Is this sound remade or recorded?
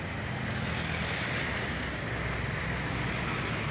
recorded